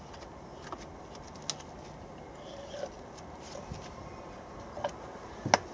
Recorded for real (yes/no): yes